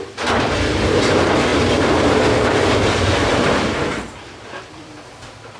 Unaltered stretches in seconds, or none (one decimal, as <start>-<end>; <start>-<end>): 0.0-1.5; 4.9-5.6